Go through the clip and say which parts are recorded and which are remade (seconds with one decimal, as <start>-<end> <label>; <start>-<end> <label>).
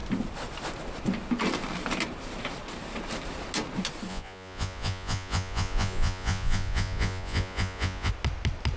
0.0-4.1 recorded; 4.1-8.1 remade; 8.1-8.8 recorded